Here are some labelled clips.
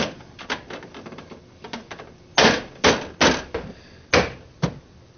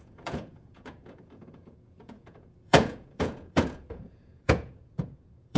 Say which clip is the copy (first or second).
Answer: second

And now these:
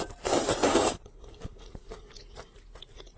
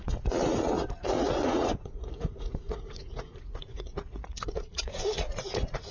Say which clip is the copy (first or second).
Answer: second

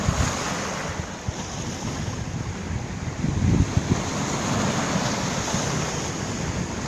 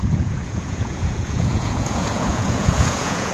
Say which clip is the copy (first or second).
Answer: second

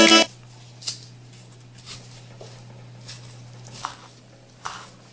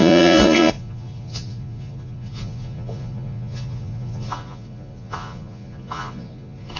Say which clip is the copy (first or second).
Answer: second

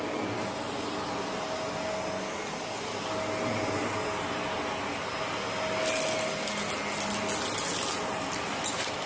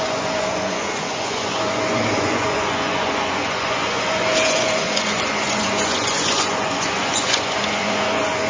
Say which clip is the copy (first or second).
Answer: second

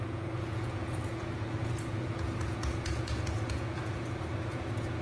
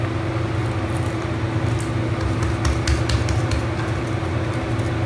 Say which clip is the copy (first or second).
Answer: first